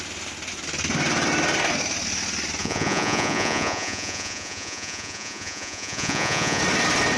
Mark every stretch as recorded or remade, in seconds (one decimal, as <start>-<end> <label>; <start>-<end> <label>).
0.0-2.6 recorded; 2.6-6.6 remade; 6.6-7.2 recorded